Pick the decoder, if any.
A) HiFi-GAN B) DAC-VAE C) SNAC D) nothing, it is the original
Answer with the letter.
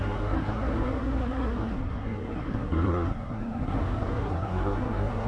C